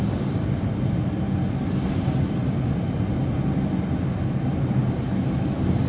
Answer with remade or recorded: recorded